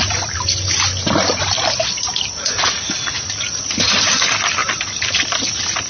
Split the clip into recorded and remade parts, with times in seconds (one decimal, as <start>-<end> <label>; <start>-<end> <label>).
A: 0.0-5.9 recorded